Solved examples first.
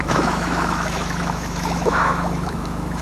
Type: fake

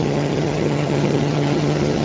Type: fake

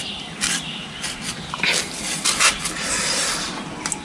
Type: real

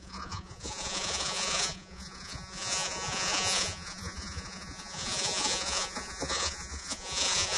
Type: fake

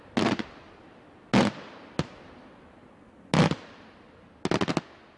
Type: real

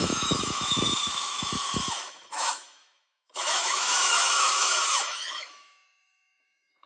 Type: fake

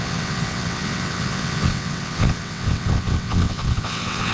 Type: fake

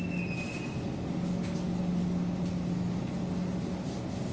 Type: real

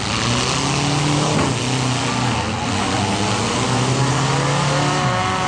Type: real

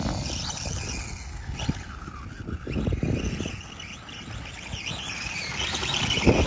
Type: real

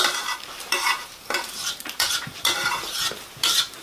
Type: fake